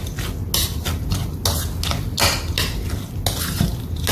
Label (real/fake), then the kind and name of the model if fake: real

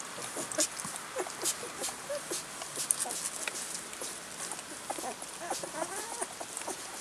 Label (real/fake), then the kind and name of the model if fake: real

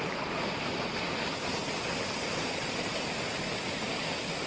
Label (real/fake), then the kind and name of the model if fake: real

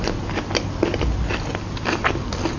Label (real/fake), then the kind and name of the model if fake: real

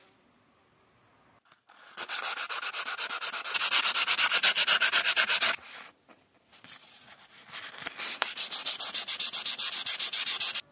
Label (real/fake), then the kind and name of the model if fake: real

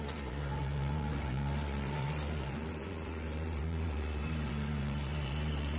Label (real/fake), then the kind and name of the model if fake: fake, vocoder, Vocos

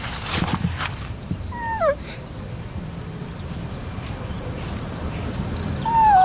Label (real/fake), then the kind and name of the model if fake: fake, vocoder, BigVGAN v2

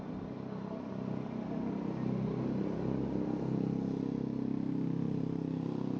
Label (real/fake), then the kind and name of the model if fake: real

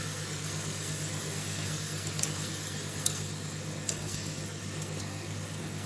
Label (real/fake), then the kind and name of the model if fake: fake, codec, SNAC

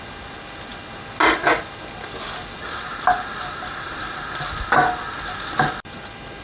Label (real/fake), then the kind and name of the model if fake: real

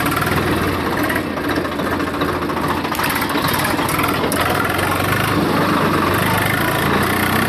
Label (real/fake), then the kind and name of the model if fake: real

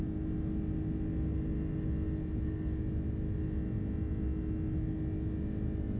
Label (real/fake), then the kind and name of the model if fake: real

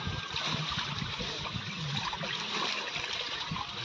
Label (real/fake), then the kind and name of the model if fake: real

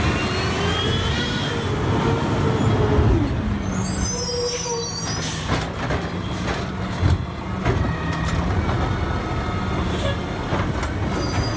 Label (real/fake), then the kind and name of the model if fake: real